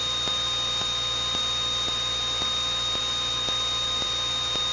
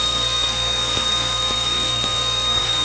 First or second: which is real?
first